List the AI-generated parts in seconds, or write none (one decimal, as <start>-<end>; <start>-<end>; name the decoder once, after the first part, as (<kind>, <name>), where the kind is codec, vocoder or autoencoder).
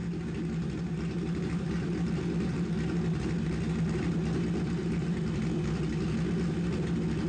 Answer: none